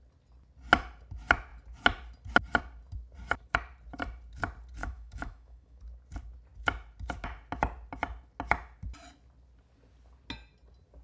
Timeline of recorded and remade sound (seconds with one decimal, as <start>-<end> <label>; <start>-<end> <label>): 0.0-4.8 recorded; 4.8-5.8 remade; 5.8-11.0 recorded